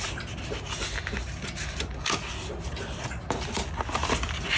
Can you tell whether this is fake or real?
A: real